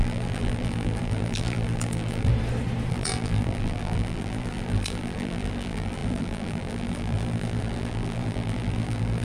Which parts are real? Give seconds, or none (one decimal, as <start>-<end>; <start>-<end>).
2.3-2.9